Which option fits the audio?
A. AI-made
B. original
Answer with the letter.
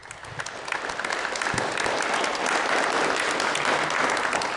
B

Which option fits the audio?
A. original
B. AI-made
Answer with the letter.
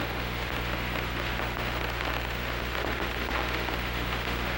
B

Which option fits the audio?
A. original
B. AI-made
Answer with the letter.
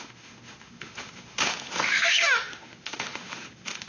B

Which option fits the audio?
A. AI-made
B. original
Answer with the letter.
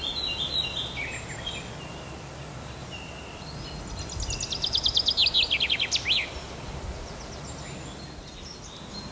B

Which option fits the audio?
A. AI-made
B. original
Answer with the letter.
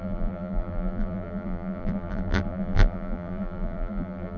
A